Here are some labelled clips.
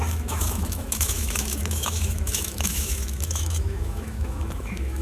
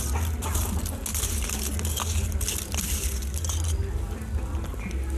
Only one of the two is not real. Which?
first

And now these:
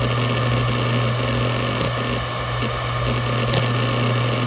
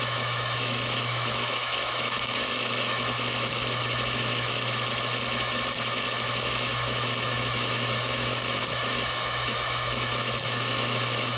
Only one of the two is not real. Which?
second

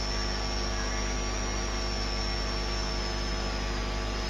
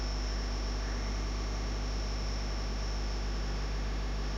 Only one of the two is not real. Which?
second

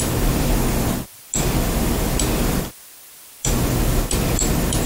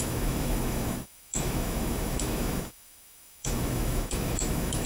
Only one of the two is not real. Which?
second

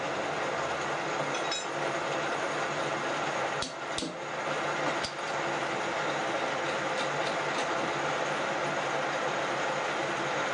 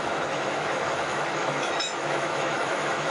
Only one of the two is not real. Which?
second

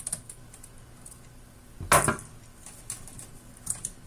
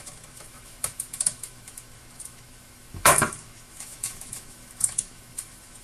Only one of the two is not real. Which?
second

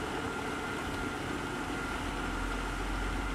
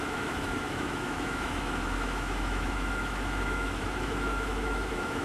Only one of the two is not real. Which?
second